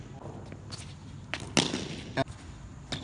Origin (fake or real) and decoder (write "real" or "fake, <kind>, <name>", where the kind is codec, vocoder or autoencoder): real